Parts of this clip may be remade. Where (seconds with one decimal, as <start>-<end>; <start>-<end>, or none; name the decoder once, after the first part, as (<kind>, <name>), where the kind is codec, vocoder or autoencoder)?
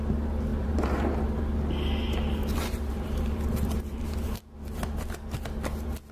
0.5-1.4 (vocoder, BigVGAN v2); 2.4-4.4